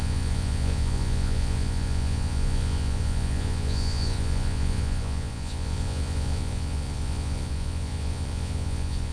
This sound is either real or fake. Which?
fake